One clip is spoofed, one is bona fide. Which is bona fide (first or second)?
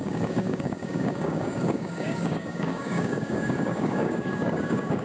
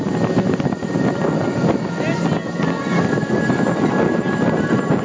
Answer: second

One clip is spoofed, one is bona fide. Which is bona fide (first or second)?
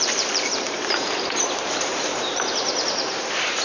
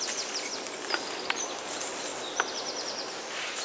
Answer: second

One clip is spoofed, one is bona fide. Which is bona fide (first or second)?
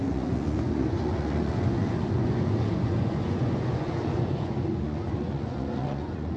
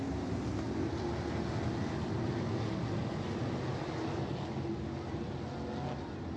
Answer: second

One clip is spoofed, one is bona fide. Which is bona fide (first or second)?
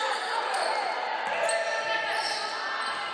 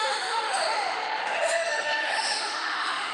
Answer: first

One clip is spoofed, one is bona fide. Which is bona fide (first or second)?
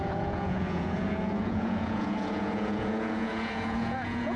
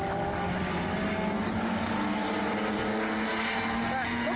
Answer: second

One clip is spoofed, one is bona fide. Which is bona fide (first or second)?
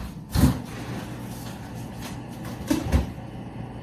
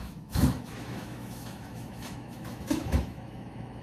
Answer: first